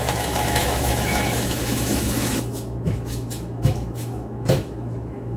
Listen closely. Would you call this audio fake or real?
fake